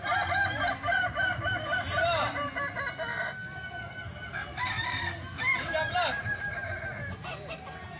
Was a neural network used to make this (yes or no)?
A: no